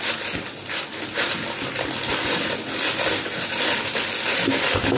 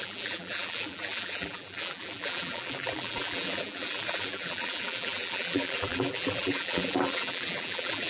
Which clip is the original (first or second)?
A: first